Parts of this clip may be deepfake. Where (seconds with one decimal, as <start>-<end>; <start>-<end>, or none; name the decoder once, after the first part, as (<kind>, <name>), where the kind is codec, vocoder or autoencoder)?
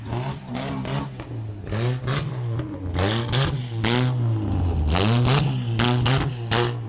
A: none